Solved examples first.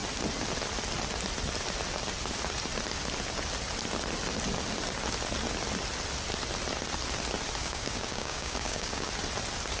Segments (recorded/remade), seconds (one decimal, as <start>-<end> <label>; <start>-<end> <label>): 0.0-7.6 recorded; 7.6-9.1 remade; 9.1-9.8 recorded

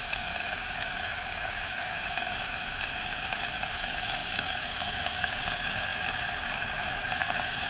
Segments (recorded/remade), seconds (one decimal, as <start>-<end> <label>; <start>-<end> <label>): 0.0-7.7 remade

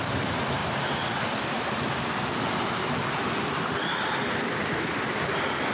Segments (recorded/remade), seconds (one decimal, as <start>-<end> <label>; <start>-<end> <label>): 0.0-5.7 recorded

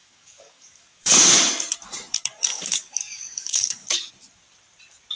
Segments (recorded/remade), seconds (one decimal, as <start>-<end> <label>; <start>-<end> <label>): 0.0-1.1 remade; 1.1-2.5 recorded; 2.5-4.1 remade; 4.1-5.2 recorded